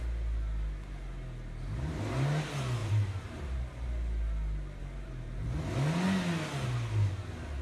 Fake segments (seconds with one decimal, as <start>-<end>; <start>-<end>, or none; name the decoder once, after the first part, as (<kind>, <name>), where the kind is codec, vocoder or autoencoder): 2.8-3.9 (vocoder, BigVGAN v2); 4.8-5.7